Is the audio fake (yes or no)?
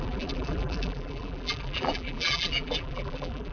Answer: yes